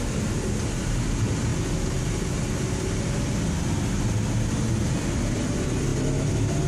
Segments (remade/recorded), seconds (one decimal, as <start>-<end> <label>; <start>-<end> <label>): 0.0-6.7 recorded